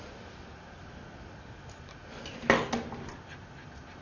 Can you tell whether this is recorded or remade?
recorded